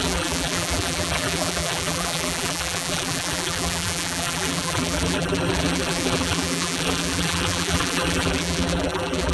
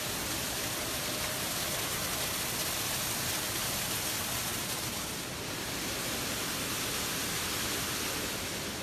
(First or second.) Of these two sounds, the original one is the second